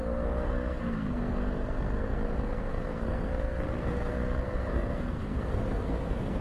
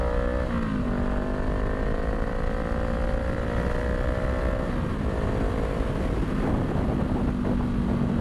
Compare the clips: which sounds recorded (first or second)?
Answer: second